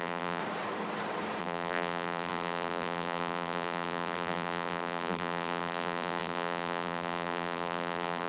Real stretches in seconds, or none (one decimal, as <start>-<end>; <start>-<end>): 0.4-1.4